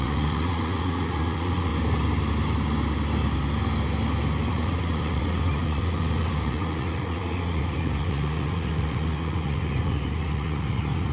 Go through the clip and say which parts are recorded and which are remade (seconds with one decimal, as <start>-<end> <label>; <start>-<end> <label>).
0.0-1.7 remade; 1.7-4.5 recorded; 4.5-11.1 remade